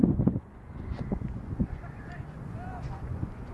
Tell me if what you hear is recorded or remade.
remade